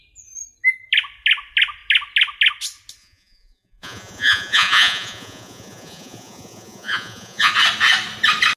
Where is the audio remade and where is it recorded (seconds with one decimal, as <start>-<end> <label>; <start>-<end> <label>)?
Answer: 0.0-3.0 recorded; 3.0-7.5 remade; 7.5-8.6 recorded